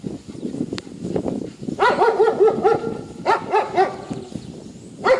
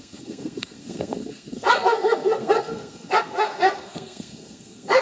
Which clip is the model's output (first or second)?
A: second